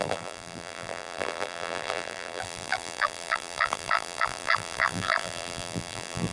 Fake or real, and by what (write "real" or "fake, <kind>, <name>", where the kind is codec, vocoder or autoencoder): fake, vocoder, BigVGAN v2